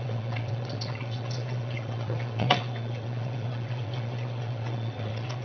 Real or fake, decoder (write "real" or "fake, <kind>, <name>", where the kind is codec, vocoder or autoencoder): fake, vocoder, WaveNeXt